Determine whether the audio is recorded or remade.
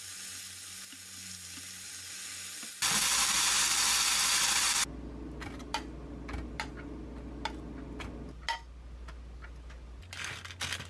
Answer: recorded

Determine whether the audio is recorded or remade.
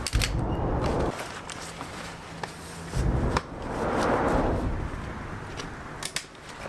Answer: recorded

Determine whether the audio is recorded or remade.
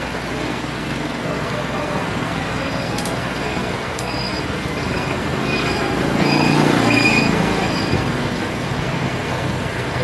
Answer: remade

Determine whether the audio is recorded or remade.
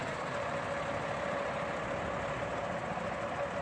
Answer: recorded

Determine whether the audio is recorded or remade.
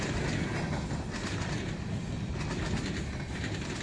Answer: recorded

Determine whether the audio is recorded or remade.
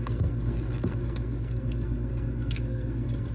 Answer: remade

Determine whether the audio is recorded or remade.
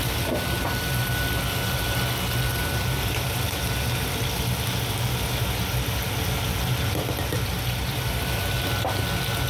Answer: recorded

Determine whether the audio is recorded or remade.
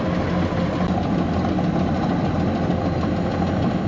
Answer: recorded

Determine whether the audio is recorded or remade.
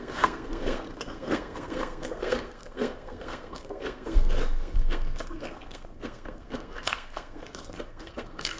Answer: remade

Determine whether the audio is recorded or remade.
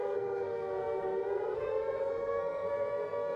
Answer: remade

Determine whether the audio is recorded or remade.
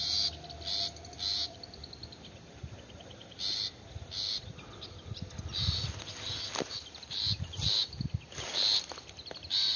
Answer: recorded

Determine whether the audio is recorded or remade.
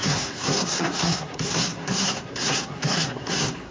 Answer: remade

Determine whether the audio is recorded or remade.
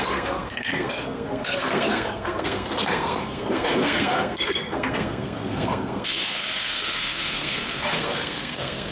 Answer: remade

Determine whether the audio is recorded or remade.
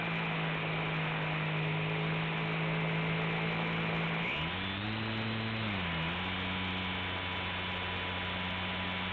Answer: recorded